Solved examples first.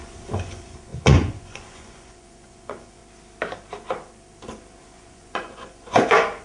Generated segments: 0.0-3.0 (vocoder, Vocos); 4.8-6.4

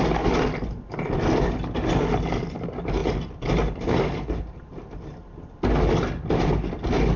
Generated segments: none